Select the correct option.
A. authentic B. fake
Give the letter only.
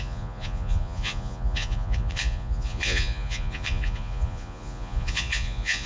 B